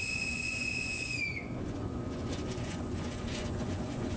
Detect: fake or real fake